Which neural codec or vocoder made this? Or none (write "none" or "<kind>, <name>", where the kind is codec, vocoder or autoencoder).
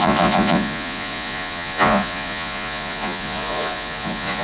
vocoder, Vocos